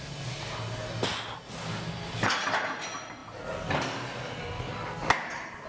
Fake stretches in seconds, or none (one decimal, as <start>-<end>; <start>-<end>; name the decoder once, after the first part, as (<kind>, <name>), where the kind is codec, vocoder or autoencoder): none